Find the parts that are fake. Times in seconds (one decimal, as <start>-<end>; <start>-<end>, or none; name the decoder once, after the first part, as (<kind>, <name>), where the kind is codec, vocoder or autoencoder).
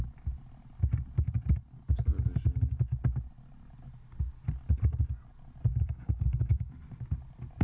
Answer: 5.7-6.7 (codec, DAC)